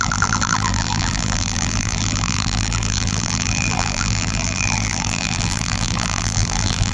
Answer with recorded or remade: remade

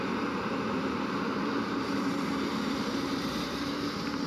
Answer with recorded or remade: remade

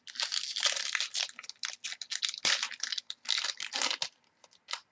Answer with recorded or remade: recorded